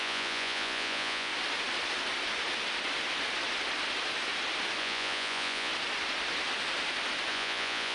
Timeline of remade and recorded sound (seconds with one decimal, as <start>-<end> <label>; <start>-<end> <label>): 0.0-1.3 remade; 1.3-4.8 recorded; 4.8-5.7 remade; 5.7-7.3 recorded; 7.3-7.9 remade